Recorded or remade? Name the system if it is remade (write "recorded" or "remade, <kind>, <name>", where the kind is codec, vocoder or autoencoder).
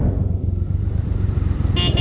recorded